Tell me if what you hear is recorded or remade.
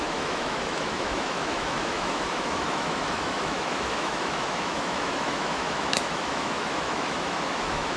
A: remade